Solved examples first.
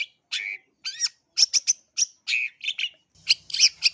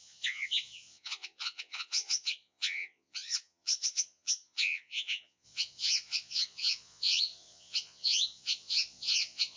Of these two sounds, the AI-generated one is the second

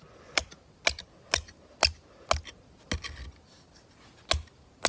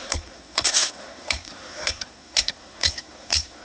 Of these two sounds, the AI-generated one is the second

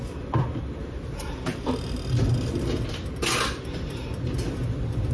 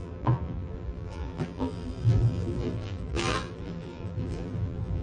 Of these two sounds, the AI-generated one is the second